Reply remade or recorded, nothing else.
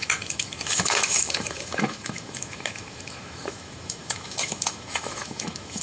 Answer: remade